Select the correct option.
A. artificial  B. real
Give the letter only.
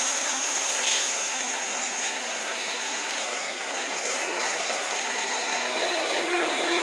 A